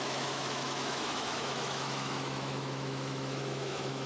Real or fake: fake